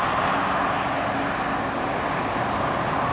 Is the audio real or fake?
real